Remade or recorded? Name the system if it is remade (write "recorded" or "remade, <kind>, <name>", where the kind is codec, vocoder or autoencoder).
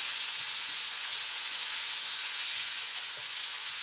remade, vocoder, Vocos